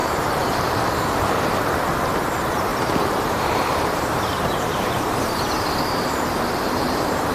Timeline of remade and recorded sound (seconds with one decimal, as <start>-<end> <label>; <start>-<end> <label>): 0.0-1.4 remade; 1.4-2.7 recorded; 2.7-7.3 remade